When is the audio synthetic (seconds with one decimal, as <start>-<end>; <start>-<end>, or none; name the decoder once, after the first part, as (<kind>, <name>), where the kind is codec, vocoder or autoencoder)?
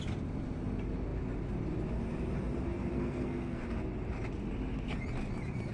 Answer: 2.9-3.6 (codec, SNAC)